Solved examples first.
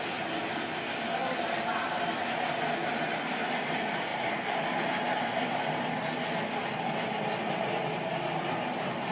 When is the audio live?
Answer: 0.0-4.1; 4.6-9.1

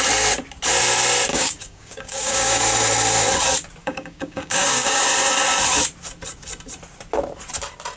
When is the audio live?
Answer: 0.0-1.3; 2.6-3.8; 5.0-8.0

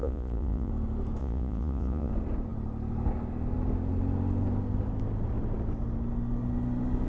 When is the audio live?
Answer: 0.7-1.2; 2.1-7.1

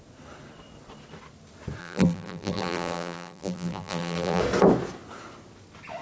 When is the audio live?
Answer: 0.0-1.8; 4.4-6.0

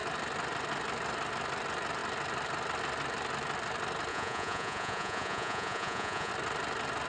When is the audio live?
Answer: 0.0-4.1; 6.3-7.1